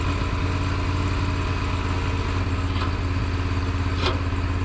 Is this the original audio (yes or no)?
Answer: yes